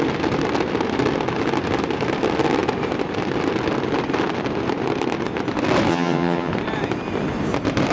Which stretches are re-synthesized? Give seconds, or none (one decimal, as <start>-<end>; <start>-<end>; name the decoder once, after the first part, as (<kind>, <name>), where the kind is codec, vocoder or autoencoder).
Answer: 5.9-6.5 (vocoder, HiFi-GAN)